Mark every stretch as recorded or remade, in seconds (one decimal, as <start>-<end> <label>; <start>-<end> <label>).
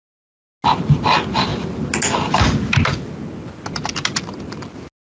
0.0-5.0 recorded